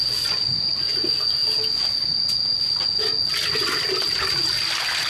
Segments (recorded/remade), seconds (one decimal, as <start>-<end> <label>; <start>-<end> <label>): 0.0-5.1 recorded